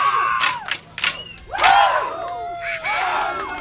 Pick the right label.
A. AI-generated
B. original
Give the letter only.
B